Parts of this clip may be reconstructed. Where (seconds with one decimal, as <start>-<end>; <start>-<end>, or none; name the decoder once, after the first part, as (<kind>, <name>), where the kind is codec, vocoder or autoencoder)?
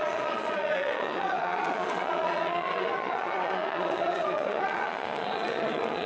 0.0-6.1 (vocoder, Vocos)